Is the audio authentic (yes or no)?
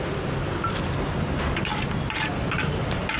yes